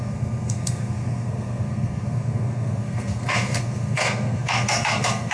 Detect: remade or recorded remade